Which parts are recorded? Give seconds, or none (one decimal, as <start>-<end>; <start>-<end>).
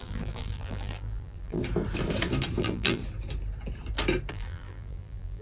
1.6-2.6; 3.0-4.3